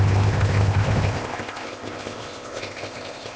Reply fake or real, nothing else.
fake